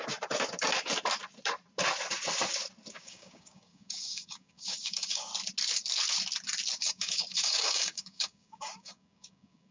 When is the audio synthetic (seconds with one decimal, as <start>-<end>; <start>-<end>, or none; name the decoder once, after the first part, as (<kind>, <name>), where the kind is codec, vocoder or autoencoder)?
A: 2.9-5.3 (codec, DAC); 6.8-9.7